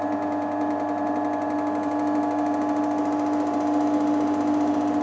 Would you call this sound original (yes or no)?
yes